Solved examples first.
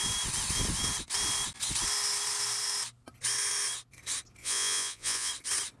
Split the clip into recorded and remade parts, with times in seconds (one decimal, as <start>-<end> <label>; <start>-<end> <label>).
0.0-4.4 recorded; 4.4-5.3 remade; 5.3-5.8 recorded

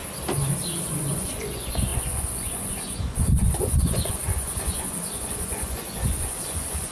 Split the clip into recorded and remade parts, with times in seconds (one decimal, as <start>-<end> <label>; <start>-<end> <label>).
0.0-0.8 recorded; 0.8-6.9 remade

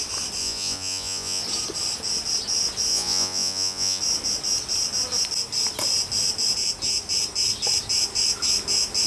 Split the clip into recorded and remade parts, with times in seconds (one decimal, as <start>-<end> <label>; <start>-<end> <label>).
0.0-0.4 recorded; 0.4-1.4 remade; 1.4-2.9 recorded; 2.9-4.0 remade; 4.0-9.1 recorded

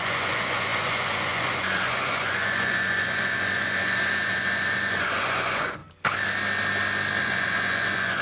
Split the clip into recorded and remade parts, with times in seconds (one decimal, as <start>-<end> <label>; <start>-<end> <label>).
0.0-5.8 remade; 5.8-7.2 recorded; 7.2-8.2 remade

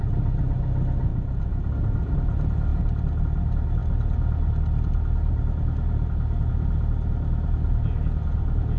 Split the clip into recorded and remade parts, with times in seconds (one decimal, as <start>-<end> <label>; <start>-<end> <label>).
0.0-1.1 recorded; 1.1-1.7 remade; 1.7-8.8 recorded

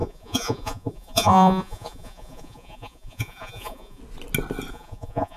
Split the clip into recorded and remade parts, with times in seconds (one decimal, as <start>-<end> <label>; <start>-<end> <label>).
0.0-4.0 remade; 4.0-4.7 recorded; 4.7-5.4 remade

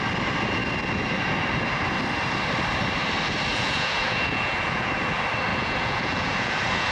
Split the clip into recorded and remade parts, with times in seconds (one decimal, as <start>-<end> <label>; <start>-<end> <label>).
0.0-3.5 recorded; 3.5-4.9 remade; 4.9-5.5 recorded; 5.5-6.9 remade